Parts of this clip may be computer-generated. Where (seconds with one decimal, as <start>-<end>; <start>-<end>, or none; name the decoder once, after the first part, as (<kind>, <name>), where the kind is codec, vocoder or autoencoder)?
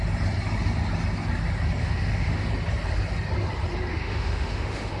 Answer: 1.8-2.5 (autoencoder, DAC-VAE); 3.9-5.0